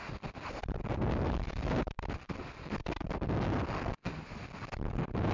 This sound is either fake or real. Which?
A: real